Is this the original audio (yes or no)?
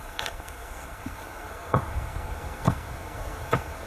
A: no